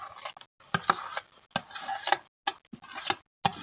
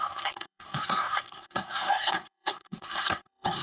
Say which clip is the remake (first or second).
second